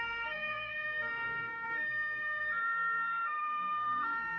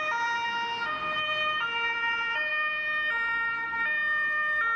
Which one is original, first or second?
second